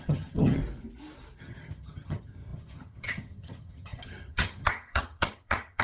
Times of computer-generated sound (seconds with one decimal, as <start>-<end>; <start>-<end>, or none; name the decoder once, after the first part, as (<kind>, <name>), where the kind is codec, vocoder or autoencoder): 0.0-0.6 (vocoder, HiFi-GAN); 1.4-5.8